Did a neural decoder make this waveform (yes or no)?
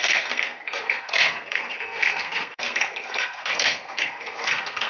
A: yes